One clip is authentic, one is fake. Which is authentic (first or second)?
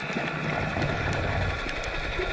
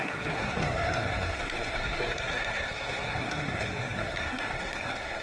first